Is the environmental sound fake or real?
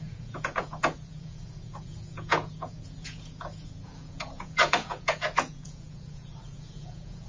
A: fake